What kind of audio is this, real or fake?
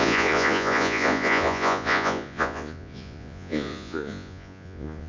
fake